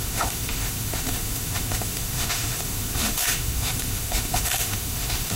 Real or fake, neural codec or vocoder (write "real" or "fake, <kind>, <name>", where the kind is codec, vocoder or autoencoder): fake, autoencoder, DAC-VAE